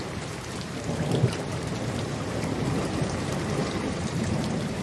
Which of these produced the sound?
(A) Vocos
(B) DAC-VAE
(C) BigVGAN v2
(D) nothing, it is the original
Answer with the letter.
C